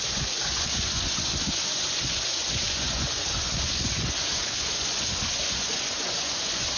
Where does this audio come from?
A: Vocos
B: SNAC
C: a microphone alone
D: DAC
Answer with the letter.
A